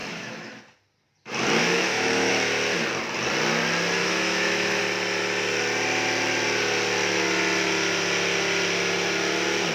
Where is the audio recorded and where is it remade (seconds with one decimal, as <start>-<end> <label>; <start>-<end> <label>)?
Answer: 0.0-0.6 remade; 0.6-1.6 recorded; 1.6-2.3 remade; 2.3-4.0 recorded; 4.0-4.8 remade; 4.8-9.7 recorded